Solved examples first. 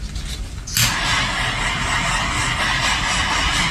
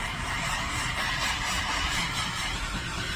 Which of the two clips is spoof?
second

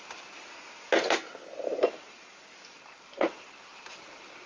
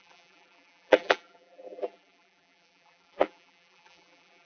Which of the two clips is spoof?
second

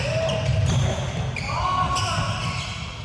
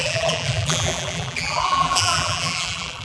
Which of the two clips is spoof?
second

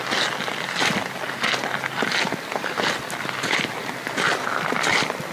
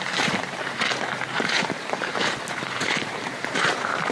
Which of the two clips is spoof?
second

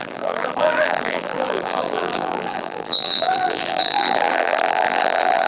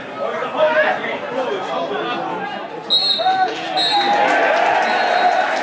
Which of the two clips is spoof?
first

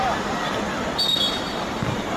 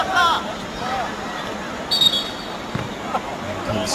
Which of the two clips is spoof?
first